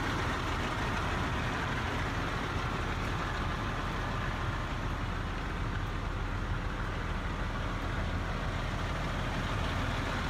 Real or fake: real